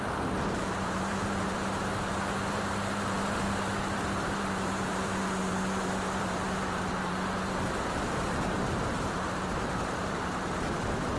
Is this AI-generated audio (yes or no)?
yes